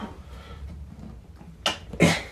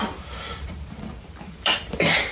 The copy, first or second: second